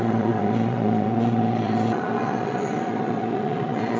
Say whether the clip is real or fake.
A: fake